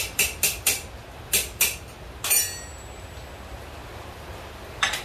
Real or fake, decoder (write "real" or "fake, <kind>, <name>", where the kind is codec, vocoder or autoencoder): real